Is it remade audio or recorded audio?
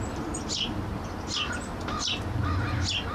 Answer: recorded